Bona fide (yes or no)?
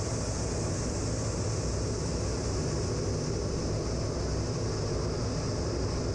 yes